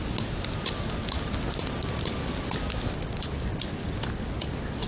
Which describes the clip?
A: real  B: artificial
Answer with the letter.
A